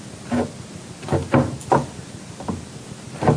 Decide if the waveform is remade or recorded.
recorded